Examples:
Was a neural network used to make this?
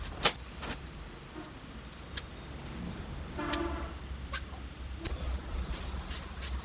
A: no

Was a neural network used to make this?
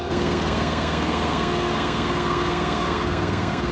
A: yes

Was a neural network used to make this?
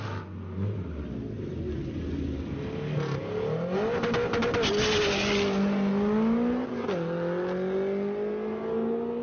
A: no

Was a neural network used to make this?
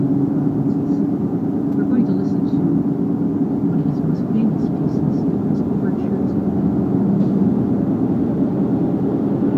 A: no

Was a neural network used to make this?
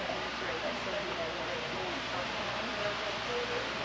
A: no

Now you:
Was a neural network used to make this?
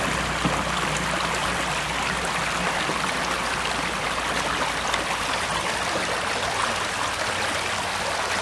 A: no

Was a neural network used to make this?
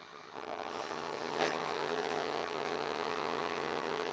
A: yes